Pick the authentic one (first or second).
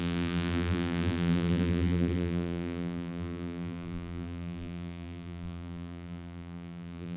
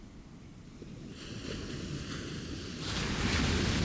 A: second